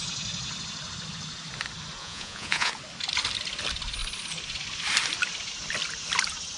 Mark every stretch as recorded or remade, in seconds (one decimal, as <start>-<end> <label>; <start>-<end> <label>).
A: 0.0-2.0 recorded; 2.0-2.7 remade; 2.7-6.6 recorded